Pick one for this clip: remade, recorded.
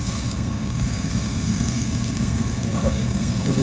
remade